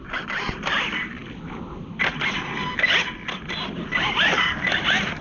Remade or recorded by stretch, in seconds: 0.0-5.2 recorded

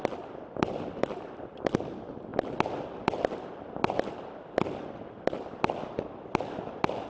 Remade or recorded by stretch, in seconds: 0.0-7.1 recorded

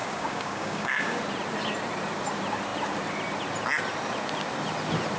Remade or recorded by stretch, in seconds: 0.0-1.2 remade; 1.2-5.2 recorded

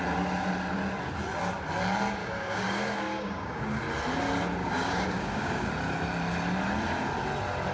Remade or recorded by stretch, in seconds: 0.0-2.2 recorded; 2.2-3.8 remade; 3.8-4.6 recorded; 4.6-5.7 remade; 5.7-7.7 recorded

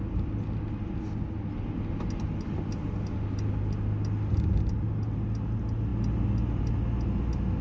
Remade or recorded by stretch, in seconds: 0.0-7.6 recorded

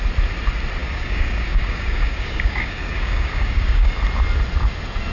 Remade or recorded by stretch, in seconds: 0.0-0.8 recorded; 0.8-3.9 remade; 3.9-5.1 recorded

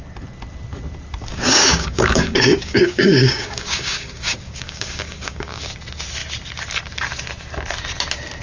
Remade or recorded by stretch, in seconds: 0.0-1.3 recorded; 1.3-5.7 remade; 5.7-8.4 recorded

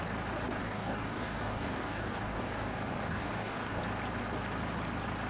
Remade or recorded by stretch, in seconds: 0.0-0.6 recorded; 0.6-3.8 remade; 3.8-5.3 recorded